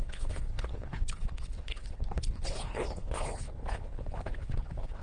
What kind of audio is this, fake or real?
fake